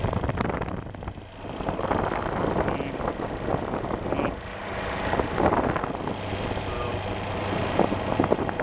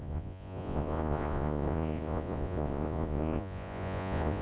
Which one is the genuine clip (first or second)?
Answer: first